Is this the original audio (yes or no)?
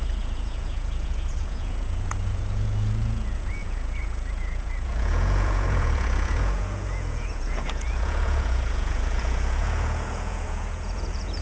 no